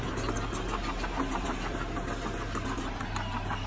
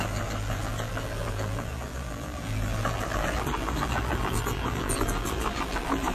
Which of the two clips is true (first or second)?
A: first